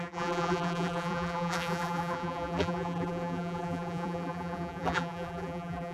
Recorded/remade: remade